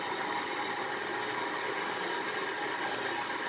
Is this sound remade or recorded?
recorded